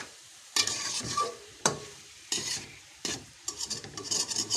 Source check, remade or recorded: remade